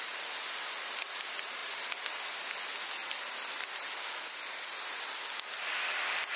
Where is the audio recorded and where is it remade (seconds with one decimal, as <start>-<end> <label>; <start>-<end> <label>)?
0.0-1.6 recorded; 1.6-2.3 remade; 2.3-3.0 recorded; 3.0-3.9 remade; 3.9-6.4 recorded